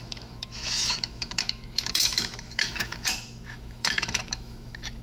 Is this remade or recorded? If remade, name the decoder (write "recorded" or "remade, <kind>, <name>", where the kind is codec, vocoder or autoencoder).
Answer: remade, autoencoder, DAC-VAE